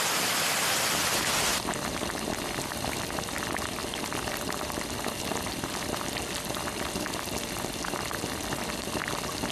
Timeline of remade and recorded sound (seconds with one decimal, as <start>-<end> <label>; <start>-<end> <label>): 0.0-3.8 recorded; 3.8-6.2 remade; 6.2-9.5 recorded

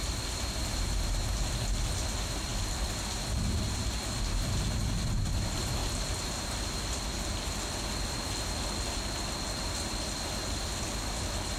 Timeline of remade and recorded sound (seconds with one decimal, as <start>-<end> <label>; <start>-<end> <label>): 0.0-5.8 recorded; 5.8-6.8 remade; 6.8-11.6 recorded

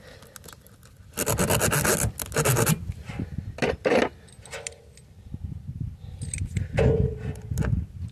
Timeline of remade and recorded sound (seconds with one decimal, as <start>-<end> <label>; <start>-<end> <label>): 0.0-8.1 recorded